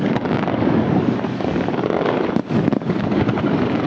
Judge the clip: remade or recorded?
remade